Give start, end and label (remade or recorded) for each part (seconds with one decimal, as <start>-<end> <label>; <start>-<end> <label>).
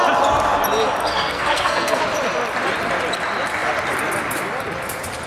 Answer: 0.0-1.0 recorded; 1.0-2.0 remade; 2.0-5.3 recorded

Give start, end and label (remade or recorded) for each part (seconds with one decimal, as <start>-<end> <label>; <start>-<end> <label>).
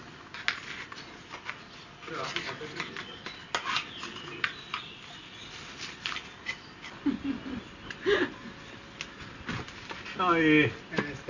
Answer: 0.0-11.3 recorded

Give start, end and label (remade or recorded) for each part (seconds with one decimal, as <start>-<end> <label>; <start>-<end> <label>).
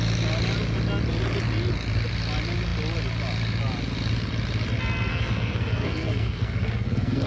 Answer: 0.0-5.1 recorded; 5.1-7.3 remade